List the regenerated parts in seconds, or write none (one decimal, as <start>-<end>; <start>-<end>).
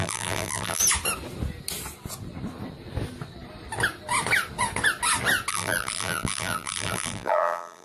0.0-0.8; 5.5-7.8